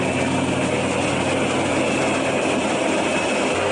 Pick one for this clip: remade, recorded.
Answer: recorded